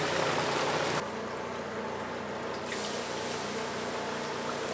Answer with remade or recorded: recorded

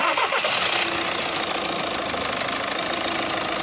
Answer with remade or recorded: recorded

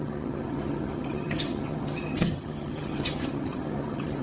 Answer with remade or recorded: remade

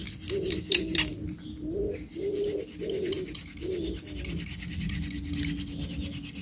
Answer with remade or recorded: recorded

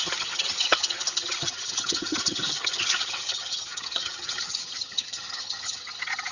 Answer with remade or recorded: remade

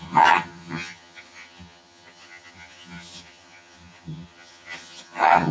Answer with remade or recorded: remade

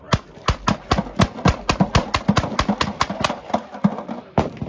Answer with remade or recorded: recorded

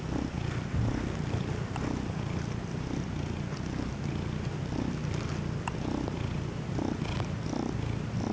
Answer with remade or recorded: recorded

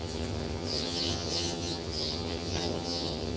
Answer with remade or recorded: remade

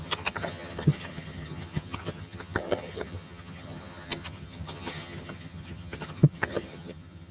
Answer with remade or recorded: remade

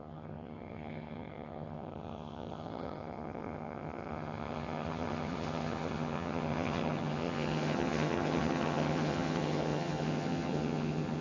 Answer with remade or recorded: remade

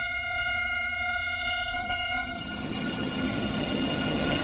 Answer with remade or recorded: remade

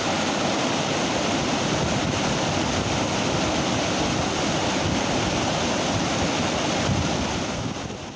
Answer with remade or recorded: recorded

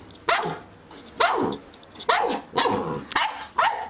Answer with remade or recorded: recorded